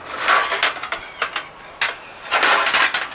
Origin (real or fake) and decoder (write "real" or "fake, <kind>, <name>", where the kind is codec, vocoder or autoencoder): real